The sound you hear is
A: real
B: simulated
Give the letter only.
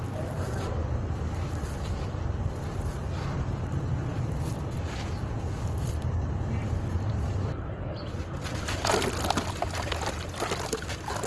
A